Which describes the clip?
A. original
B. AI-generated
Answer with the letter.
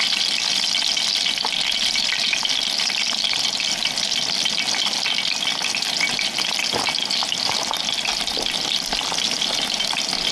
A